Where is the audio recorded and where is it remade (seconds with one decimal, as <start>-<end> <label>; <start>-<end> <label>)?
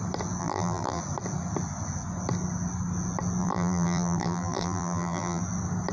0.0-0.4 recorded; 0.4-1.0 remade; 1.0-3.4 recorded; 3.4-5.4 remade; 5.4-5.9 recorded